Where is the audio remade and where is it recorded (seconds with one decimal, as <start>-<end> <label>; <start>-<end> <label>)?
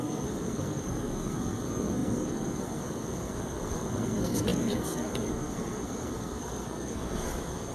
0.0-7.7 remade